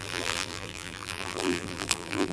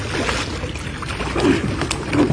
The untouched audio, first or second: second